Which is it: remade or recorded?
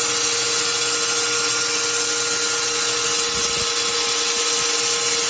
recorded